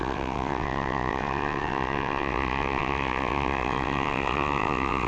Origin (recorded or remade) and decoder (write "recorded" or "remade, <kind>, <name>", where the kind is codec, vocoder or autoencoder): remade, vocoder, WaveNeXt